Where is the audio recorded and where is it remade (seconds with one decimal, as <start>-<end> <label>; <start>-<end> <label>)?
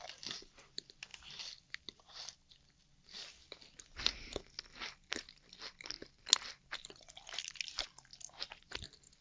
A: 0.0-9.2 recorded